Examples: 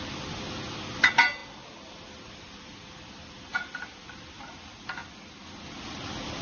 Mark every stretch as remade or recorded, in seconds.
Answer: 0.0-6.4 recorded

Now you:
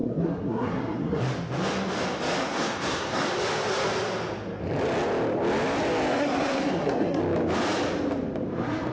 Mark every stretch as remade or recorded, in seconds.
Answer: 0.0-1.2 remade; 1.2-2.4 recorded; 2.4-3.3 remade; 3.3-6.1 recorded; 6.1-7.2 remade; 7.2-8.9 recorded

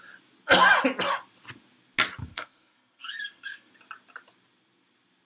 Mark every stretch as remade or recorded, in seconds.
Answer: 0.0-2.3 recorded; 2.3-3.7 remade; 3.7-5.2 recorded

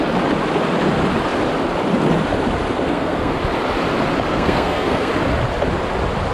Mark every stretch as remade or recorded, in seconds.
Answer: 0.0-2.9 recorded; 2.9-3.4 remade; 3.4-4.3 recorded; 4.3-5.1 remade; 5.1-6.3 recorded

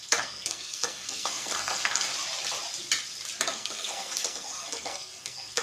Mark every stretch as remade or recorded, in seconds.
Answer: 0.0-2.1 remade; 2.1-3.4 recorded; 3.4-5.6 remade